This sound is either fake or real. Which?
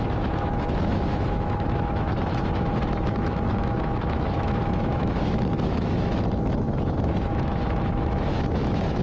fake